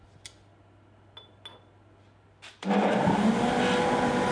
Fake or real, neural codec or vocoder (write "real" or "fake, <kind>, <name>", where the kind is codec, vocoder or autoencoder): real